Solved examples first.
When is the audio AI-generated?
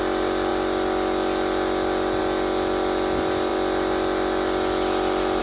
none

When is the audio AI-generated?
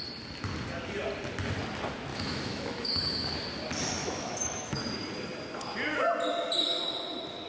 2.1-3.3 (autoencoder, DAC-VAE); 4.0-4.8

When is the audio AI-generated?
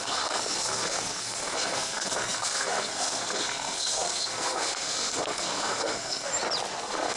0.0-6.3 (codec, SNAC); 6.8-7.2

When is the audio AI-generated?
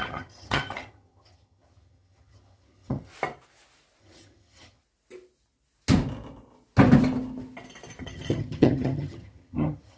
0.0-3.1 (vocoder, HiFi-GAN); 4.0-4.8; 8.0-10.0